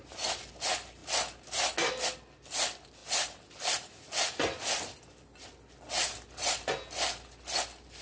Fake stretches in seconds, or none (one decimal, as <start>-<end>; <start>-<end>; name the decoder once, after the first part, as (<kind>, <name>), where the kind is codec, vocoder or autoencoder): none